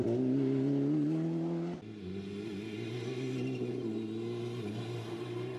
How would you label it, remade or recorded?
recorded